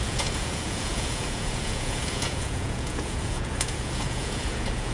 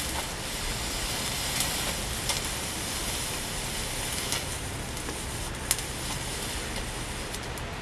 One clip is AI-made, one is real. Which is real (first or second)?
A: second